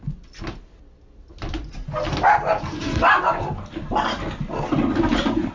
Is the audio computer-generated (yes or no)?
no